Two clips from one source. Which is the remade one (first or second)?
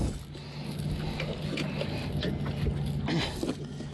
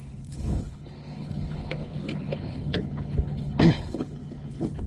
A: second